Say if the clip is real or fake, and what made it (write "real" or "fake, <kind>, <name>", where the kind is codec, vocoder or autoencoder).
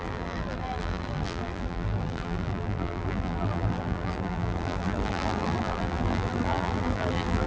fake, vocoder, BigVGAN v2